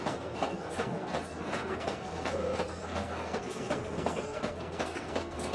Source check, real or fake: fake